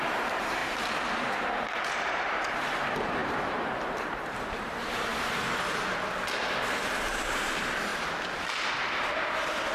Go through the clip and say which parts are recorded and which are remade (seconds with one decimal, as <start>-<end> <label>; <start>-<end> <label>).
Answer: 0.0-5.1 remade; 5.1-6.8 recorded; 6.8-7.9 remade; 7.9-9.7 recorded